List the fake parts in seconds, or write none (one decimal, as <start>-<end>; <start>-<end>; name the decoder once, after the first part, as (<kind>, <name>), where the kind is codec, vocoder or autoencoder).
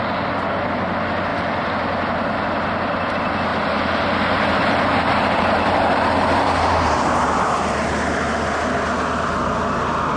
3.5-8.2 (vocoder, BigVGAN v2)